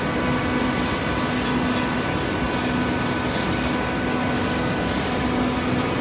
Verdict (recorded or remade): recorded